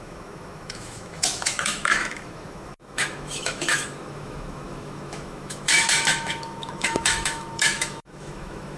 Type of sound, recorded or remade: remade